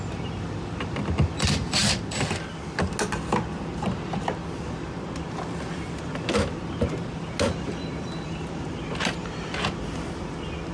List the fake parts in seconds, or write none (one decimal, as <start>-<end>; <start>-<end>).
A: none